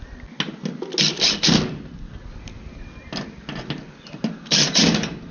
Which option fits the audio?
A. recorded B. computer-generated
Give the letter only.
A